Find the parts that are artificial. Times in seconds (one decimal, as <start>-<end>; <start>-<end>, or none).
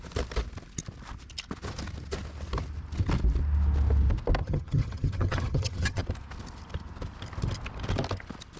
4.4-6.0